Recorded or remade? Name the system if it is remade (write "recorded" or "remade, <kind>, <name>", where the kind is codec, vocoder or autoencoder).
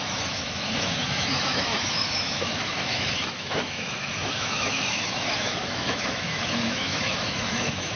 remade, autoencoder, DAC-VAE